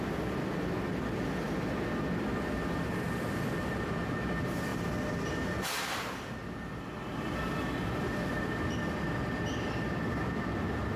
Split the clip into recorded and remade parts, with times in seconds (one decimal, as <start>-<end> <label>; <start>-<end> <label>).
0.0-11.0 recorded

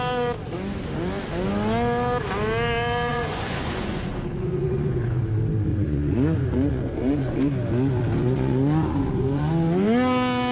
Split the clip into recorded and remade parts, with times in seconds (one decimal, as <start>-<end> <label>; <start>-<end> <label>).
0.0-3.1 recorded; 3.1-5.2 remade; 5.2-5.7 recorded; 5.7-7.4 remade; 7.4-8.2 recorded; 8.2-9.5 remade; 9.5-10.5 recorded

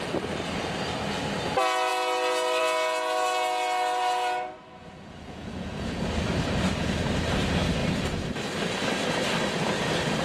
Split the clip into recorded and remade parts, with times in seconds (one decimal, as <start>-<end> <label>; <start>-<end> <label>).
0.0-4.8 recorded; 4.8-6.0 remade; 6.0-10.2 recorded

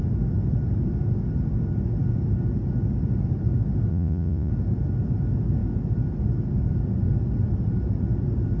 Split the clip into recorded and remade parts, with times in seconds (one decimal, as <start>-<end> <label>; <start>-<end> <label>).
0.0-3.9 recorded; 3.9-4.5 remade; 4.5-8.6 recorded

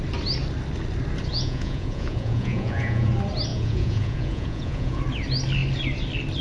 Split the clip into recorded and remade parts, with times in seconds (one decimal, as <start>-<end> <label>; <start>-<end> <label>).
0.0-1.3 recorded; 1.3-3.1 remade; 3.1-3.5 recorded; 3.5-5.0 remade; 5.0-6.4 recorded

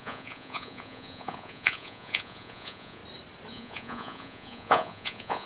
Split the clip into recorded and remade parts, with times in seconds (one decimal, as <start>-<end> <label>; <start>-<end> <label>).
0.0-3.0 remade; 3.0-3.5 recorded; 3.5-5.5 remade

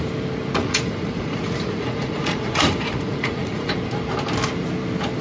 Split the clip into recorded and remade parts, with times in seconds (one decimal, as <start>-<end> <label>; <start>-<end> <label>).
0.0-0.6 recorded; 0.6-3.7 remade; 3.7-5.2 recorded